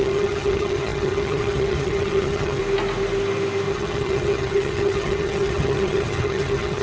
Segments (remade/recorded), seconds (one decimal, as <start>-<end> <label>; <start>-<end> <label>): 0.0-2.6 remade; 2.6-3.7 recorded; 3.7-6.8 remade